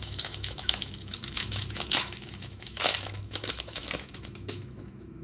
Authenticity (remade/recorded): remade